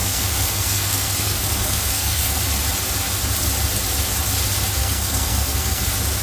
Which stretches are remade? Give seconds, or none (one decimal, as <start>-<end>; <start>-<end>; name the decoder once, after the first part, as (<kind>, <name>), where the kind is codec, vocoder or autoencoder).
0.0-2.4 (codec, SNAC); 4.8-5.8